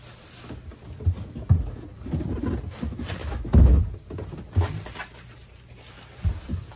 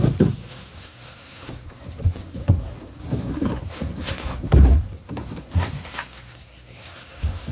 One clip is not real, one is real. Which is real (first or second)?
first